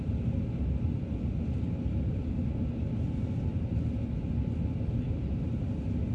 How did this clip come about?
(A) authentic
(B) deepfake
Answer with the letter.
A